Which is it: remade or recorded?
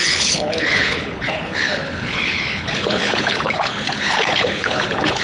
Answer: remade